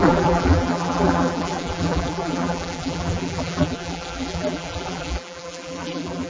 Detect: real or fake fake